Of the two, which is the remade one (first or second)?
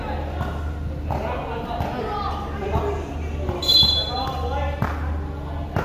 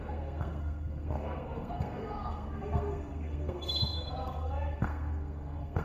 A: second